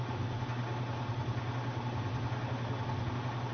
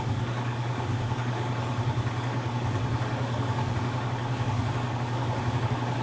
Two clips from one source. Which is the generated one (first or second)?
second